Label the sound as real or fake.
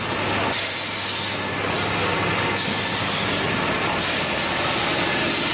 real